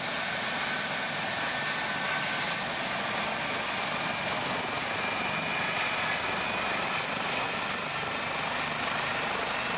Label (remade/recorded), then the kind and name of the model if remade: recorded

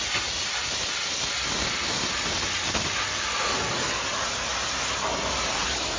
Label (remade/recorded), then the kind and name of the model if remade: recorded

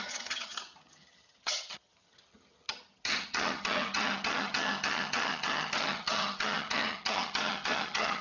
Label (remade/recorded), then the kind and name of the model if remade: remade, vocoder, HiFi-GAN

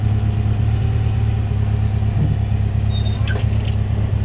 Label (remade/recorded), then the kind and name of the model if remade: recorded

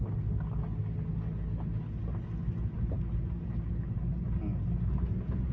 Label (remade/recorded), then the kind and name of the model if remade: recorded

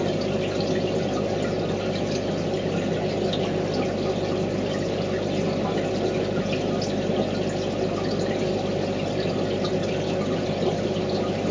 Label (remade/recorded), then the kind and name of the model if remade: recorded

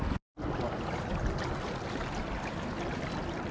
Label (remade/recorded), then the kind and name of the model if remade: recorded